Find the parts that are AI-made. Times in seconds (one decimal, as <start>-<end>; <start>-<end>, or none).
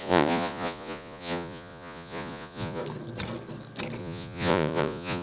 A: 0.0-2.8; 4.0-5.2